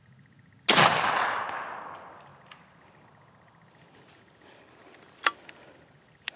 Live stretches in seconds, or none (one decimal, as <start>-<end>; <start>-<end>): 0.0-6.4